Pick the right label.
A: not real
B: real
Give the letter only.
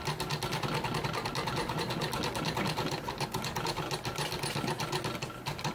B